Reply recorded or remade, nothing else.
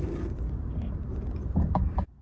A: recorded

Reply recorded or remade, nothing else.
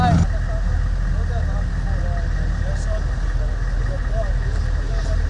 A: recorded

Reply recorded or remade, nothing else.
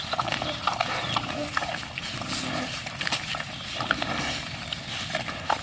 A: recorded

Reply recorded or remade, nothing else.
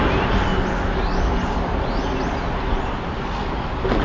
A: recorded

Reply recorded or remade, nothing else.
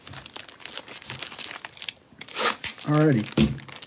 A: recorded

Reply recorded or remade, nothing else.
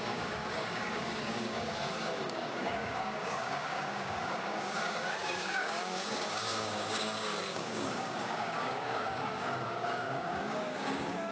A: remade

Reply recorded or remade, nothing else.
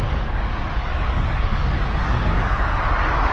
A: remade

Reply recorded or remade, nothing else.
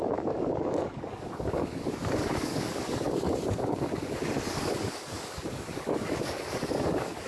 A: remade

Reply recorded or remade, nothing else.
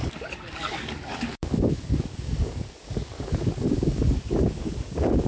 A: remade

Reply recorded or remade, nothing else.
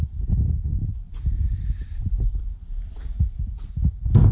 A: recorded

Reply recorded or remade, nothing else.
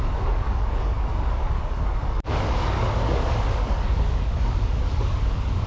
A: remade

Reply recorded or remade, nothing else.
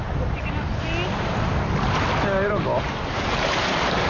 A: recorded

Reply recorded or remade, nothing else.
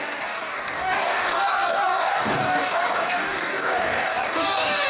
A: remade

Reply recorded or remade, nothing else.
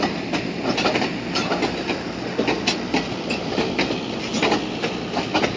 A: recorded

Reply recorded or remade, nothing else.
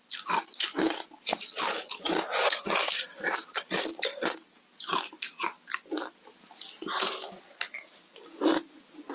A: recorded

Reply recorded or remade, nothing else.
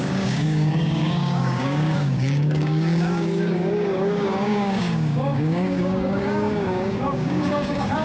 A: remade